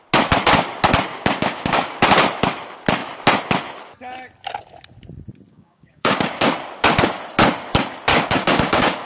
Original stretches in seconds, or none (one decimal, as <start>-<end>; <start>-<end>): 0.0-1.1; 2.0-5.5; 6.5-8.1